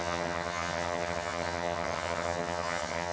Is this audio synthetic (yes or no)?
yes